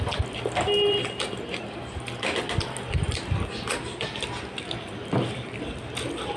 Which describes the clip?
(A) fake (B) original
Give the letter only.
B